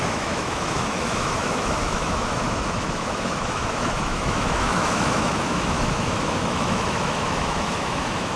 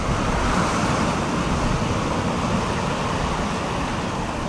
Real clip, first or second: second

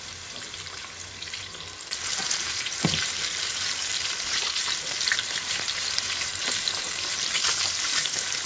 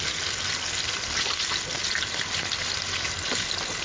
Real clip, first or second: second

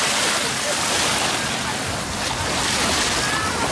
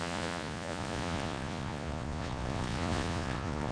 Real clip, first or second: first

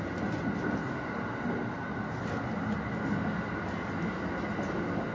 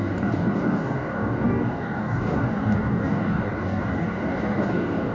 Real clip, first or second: first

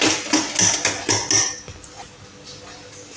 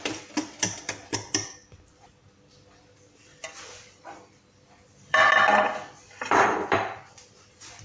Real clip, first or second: first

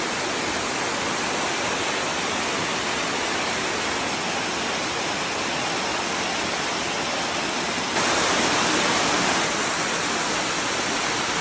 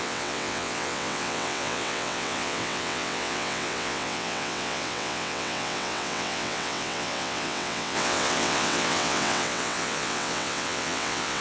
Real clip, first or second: first